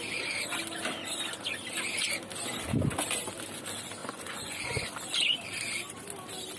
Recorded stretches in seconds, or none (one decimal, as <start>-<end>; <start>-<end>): 0.0-4.0; 4.9-6.6